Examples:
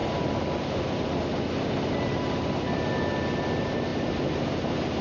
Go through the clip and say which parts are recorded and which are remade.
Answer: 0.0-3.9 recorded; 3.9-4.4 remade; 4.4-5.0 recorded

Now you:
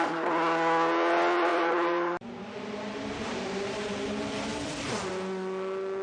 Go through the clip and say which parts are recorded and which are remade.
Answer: 0.0-1.5 recorded; 1.5-5.1 remade; 5.1-6.0 recorded

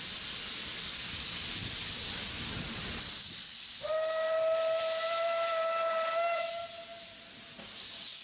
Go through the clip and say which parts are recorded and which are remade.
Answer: 0.0-1.6 recorded; 1.6-2.1 remade; 2.1-8.2 recorded

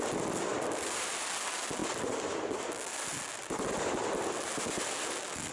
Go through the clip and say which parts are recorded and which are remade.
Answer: 0.0-0.5 recorded; 0.5-1.1 remade; 1.1-5.5 recorded